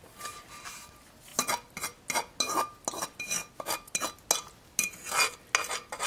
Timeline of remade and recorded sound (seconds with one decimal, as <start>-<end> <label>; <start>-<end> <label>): 0.0-6.1 recorded